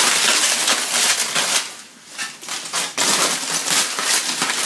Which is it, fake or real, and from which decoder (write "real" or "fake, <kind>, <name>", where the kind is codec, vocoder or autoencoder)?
real